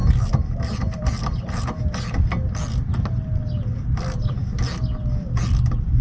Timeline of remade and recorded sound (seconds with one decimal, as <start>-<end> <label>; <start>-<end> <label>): 0.0-6.0 recorded